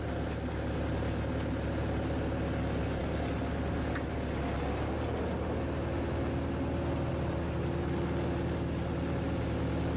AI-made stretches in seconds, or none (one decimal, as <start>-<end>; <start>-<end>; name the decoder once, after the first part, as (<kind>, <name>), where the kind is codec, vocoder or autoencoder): none